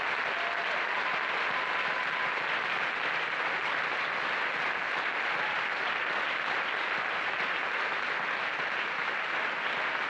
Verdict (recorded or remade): recorded